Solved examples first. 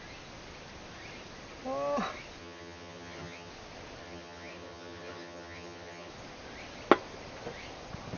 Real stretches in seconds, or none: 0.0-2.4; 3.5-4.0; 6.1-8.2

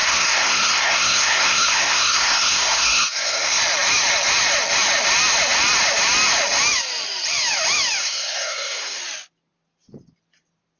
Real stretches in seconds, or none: 3.6-8.0; 9.0-10.8

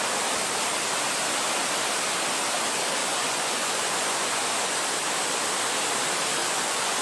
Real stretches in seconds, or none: 0.0-3.0; 4.8-6.4

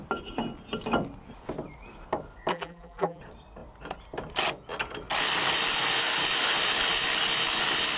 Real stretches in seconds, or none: 0.0-2.5; 3.2-8.0

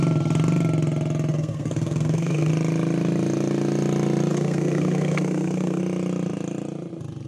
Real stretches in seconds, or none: 0.0-1.3; 2.5-4.3; 5.8-7.3